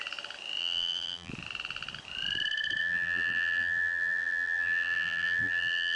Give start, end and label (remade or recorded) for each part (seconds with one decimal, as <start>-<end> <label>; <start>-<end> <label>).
0.0-0.6 recorded; 0.6-1.3 remade; 1.3-2.8 recorded; 2.8-6.0 remade